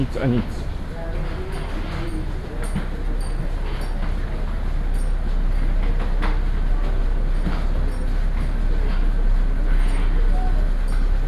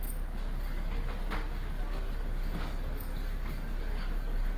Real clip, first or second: first